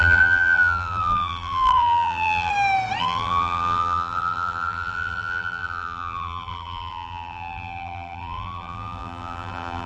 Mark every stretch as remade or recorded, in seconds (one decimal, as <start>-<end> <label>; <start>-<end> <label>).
0.0-2.5 remade; 2.5-3.0 recorded; 3.0-9.9 remade